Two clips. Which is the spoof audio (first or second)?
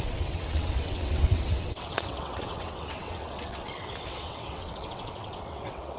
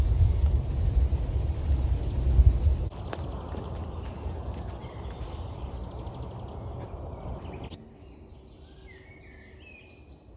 first